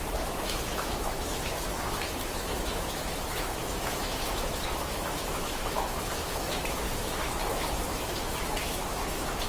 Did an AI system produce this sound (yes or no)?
yes